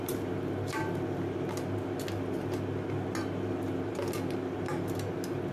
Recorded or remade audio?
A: recorded